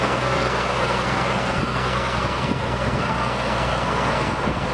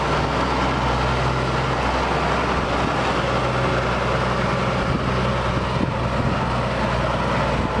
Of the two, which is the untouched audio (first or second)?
second